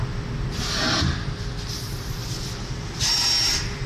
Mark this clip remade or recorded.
recorded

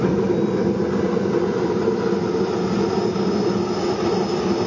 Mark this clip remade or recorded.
recorded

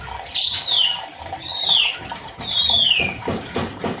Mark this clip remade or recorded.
remade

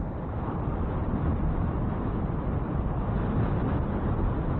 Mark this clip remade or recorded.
recorded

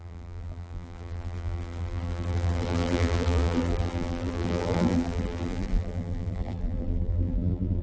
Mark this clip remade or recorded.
remade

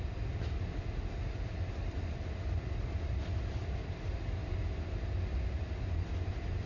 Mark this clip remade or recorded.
recorded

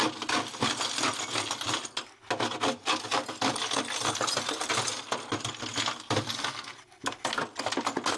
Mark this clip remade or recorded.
recorded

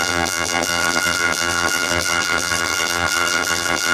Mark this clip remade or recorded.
remade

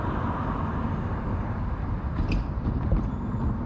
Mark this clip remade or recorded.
remade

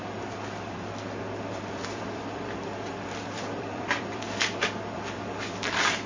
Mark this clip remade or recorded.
remade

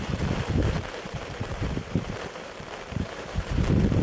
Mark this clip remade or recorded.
remade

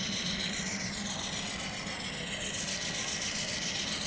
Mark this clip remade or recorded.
recorded